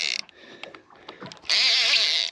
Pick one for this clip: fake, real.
real